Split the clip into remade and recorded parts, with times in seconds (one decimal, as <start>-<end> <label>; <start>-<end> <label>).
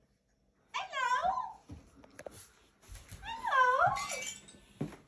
0.0-1.2 recorded; 1.2-4.1 remade; 4.1-5.1 recorded